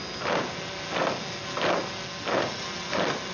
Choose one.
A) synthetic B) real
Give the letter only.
B